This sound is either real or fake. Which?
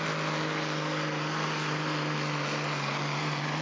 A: real